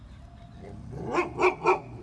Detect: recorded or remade recorded